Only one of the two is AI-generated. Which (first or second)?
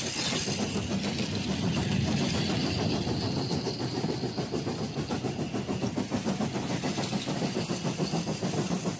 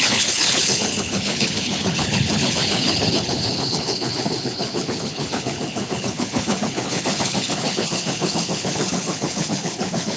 second